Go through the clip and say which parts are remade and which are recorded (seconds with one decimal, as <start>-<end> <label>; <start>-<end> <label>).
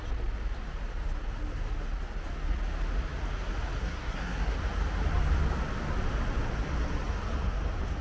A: 0.0-3.8 recorded; 3.8-4.6 remade; 4.6-8.0 recorded